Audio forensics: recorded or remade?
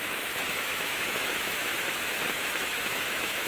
remade